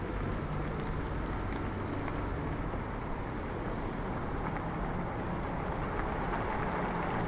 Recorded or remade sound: recorded